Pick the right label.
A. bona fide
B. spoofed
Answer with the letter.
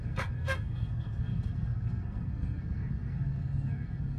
B